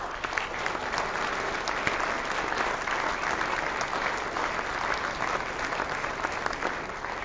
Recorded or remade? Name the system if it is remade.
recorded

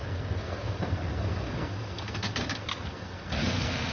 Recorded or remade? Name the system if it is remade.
remade, codec, SNAC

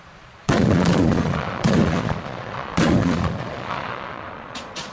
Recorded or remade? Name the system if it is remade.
remade, vocoder, Vocos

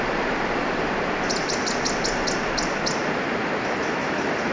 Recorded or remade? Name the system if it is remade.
recorded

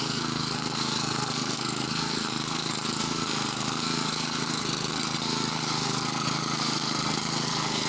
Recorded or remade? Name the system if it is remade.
remade, codec, SNAC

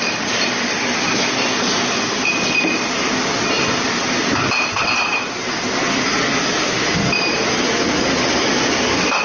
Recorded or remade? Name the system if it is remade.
recorded